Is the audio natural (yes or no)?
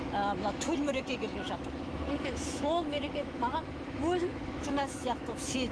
no